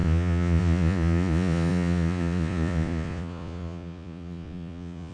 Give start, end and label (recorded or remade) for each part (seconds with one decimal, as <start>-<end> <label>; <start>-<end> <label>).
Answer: 0.0-5.1 remade